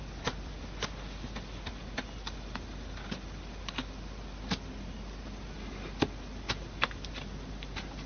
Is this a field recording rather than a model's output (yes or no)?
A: yes